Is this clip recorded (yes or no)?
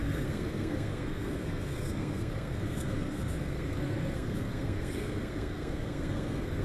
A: no